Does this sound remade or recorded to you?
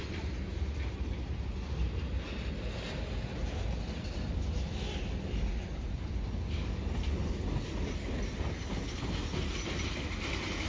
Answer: recorded